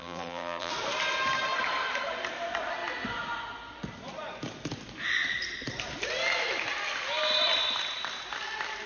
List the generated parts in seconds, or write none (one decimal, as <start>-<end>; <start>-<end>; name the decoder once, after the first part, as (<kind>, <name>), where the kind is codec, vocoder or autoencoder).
0.0-0.7 (vocoder, BigVGAN v2)